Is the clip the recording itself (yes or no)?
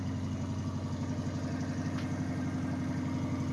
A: yes